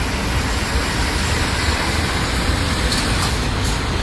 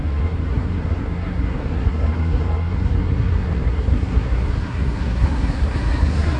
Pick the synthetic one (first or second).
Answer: second